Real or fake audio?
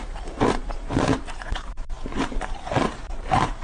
fake